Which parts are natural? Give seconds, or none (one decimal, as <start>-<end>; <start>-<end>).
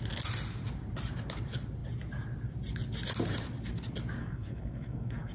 0.0-4.2